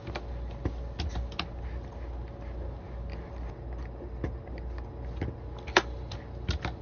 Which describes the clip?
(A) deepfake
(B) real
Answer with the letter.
B